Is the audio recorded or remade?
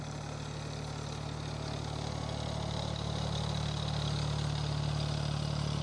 recorded